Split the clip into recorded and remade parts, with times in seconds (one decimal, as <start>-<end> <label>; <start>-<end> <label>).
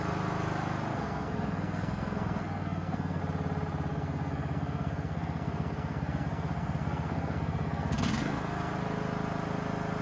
0.0-0.9 recorded; 0.9-3.2 remade; 3.2-3.9 recorded; 3.9-8.7 remade; 8.7-10.0 recorded